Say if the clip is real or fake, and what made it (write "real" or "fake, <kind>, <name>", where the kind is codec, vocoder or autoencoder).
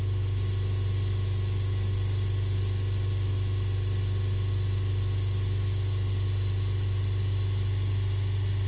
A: real